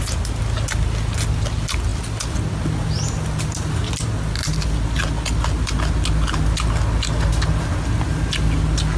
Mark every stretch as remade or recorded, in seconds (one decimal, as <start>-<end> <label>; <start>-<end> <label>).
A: 0.0-9.0 recorded